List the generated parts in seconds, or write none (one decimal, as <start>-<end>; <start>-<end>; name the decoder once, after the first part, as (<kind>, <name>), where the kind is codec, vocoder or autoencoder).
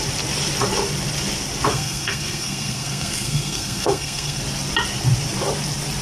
1.7-4.4 (codec, SNAC)